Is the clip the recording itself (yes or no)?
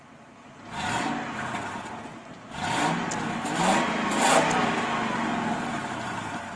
yes